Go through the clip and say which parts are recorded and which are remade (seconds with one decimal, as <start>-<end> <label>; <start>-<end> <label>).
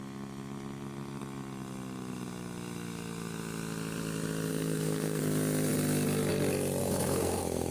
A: 0.0-4.5 recorded; 4.5-5.2 remade; 5.2-6.8 recorded; 6.8-7.7 remade